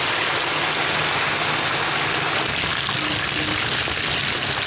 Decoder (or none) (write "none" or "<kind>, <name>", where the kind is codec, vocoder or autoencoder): none